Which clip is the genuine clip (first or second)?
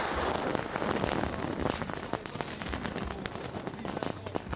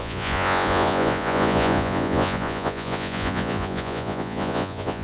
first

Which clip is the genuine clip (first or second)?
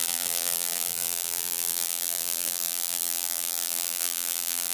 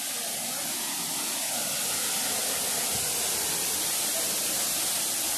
second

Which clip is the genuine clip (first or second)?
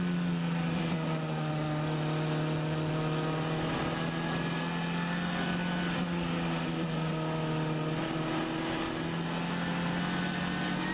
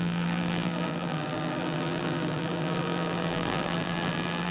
first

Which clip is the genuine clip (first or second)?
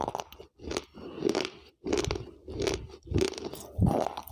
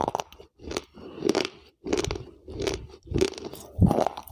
first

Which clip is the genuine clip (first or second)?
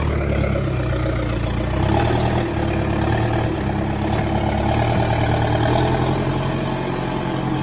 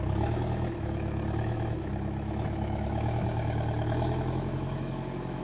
first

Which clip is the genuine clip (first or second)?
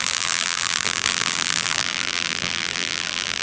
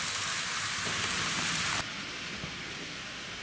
second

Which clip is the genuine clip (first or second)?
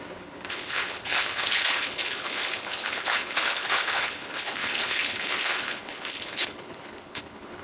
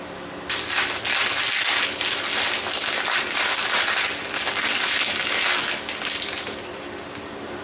second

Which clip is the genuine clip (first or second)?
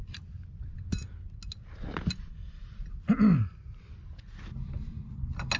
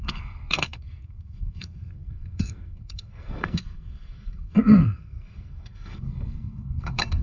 first